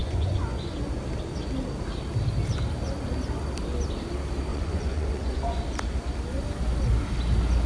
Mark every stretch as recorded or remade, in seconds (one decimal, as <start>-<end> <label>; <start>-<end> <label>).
0.0-1.0 remade; 1.0-4.5 recorded; 4.5-5.6 remade; 5.6-7.7 recorded